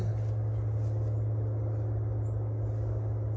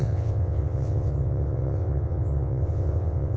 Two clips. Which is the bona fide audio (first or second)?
first